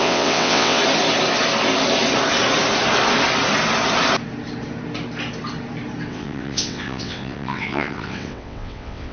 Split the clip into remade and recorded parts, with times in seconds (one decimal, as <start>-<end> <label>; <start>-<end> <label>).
0.0-0.8 remade; 0.8-6.1 recorded; 6.1-9.1 remade